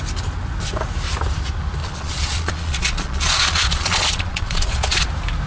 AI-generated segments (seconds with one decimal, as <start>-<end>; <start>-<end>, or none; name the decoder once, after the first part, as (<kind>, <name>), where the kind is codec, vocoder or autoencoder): 1.8-5.1 (vocoder, Vocos)